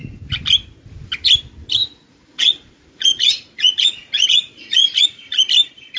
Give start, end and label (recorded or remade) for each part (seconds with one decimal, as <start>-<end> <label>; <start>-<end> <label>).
0.0-1.8 recorded; 1.8-5.4 remade; 5.4-6.0 recorded